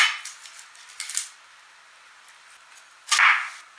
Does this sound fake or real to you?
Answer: real